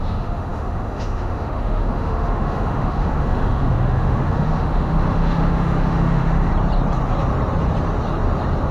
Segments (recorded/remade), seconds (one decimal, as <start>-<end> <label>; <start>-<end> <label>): 0.0-6.5 remade; 6.5-8.7 recorded